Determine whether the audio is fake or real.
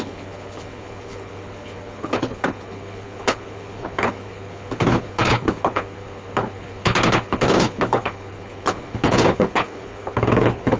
fake